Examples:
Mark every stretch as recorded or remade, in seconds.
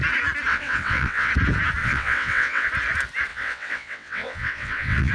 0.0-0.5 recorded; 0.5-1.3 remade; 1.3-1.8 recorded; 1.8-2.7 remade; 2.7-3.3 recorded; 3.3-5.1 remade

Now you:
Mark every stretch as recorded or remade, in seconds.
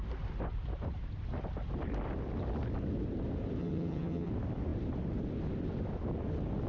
0.0-3.6 recorded; 3.6-4.3 remade; 4.3-6.7 recorded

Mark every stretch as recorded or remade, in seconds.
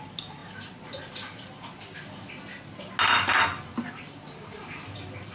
0.0-5.3 recorded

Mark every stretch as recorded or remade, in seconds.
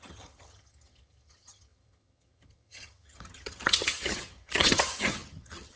0.0-5.8 remade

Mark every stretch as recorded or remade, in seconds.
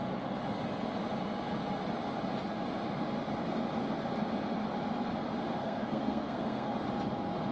0.0-5.6 recorded; 5.6-6.7 remade; 6.7-7.5 recorded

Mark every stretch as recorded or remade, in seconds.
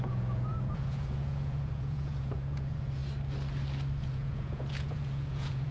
0.0-3.0 remade; 3.0-4.0 recorded; 4.0-5.7 remade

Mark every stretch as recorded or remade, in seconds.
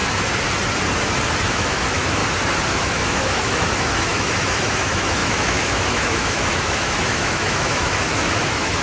0.0-1.5 recorded; 1.5-2.2 remade; 2.2-2.7 recorded; 2.7-8.8 remade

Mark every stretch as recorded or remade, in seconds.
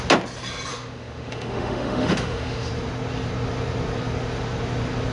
0.0-0.7 recorded; 0.7-2.7 remade; 2.7-5.1 recorded